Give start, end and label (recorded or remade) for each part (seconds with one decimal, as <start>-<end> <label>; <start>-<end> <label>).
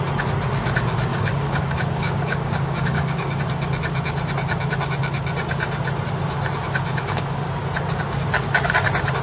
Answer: 0.0-1.1 recorded; 1.1-3.4 remade; 3.4-6.9 recorded; 6.9-7.5 remade; 7.5-9.2 recorded